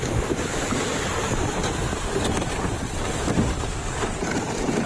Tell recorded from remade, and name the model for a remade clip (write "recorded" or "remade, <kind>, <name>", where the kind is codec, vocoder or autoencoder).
remade, vocoder, BigVGAN v2